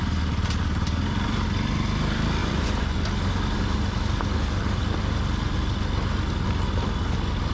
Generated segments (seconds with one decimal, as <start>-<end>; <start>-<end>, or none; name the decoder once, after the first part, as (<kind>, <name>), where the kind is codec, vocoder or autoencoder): 2.4-3.0 (vocoder, Vocos)

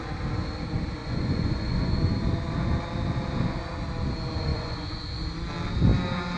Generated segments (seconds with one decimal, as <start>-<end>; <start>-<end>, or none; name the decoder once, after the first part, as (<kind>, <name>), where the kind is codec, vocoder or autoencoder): 1.0-2.0 (vocoder, Vocos); 4.5-5.2

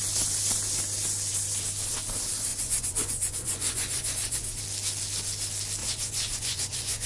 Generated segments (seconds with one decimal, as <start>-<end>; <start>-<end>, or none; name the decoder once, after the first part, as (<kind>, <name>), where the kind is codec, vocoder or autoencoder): 2.5-4.6 (vocoder, Vocos); 5.8-7.1

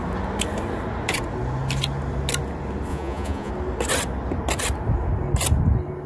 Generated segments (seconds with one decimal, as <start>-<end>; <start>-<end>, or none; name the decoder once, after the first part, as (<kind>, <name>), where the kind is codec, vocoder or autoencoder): 2.9-3.5 (vocoder, Vocos)

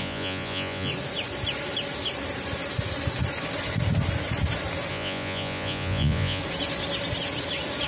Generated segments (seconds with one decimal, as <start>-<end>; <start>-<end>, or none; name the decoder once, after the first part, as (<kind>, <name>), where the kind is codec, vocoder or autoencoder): 0.0-0.9 (vocoder, Vocos); 4.9-6.4

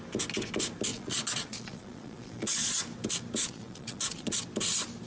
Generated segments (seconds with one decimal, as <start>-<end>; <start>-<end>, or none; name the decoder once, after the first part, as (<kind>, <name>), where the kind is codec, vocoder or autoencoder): 0.9-2.8 (vocoder, Vocos); 3.4-4.4

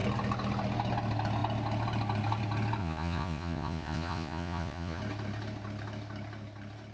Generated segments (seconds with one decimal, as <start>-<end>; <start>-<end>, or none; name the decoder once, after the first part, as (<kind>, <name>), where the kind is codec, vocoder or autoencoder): 2.8-5.0 (vocoder, Vocos)

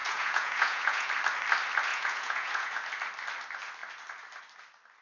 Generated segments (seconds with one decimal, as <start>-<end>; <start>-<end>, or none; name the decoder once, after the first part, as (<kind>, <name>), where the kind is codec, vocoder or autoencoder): 0.0-1.1 (vocoder, Vocos); 1.9-2.7